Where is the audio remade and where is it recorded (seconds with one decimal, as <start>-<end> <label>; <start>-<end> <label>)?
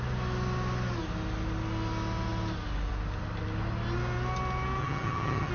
0.0-4.8 recorded; 4.8-5.5 remade